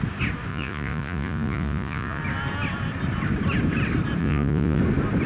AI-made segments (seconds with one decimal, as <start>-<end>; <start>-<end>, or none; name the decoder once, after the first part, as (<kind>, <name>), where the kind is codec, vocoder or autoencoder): 0.5-2.2 (vocoder, Vocos); 4.2-4.8